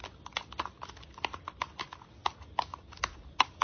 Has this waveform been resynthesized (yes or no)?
no